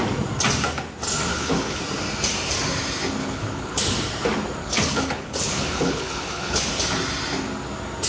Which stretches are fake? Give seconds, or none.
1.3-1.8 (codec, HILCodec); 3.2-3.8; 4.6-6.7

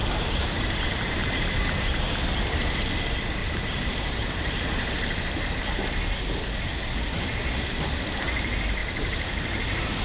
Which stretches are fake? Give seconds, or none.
0.0-2.1 (vocoder, BigVGAN v2); 3.4-4.5; 8.8-10.0

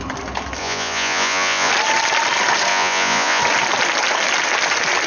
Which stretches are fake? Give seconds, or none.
0.6-1.7 (vocoder, Vocos); 2.7-3.4

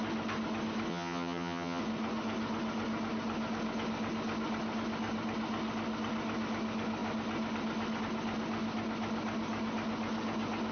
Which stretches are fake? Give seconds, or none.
0.9-1.8 (vocoder, HiFi-GAN)

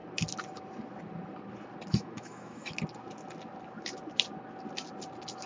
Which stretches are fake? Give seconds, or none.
1.9-2.7 (autoencoder, DAC-VAE)

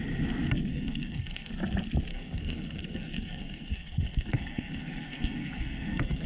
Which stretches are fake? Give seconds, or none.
0.7-1.5 (codec, SNAC); 2.1-6.3